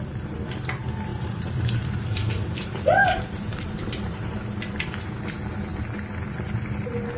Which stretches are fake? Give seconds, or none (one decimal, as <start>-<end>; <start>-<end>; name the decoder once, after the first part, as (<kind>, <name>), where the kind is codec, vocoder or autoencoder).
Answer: 1.1-4.5 (vocoder, BigVGAN v2)